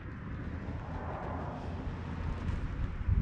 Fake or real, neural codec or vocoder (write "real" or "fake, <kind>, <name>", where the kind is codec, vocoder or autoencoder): real